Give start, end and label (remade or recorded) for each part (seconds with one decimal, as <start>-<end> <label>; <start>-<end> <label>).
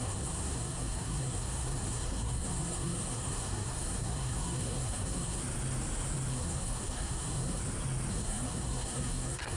0.0-5.4 remade; 5.4-6.3 recorded; 6.3-7.6 remade; 7.6-8.1 recorded; 8.1-9.6 remade